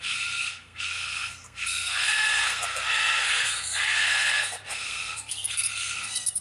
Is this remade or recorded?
remade